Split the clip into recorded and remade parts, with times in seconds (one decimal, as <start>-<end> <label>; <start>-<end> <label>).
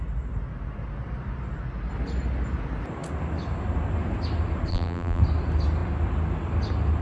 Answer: 0.0-4.7 recorded; 4.7-5.2 remade; 5.2-7.0 recorded